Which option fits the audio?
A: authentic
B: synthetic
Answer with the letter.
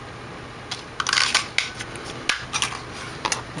A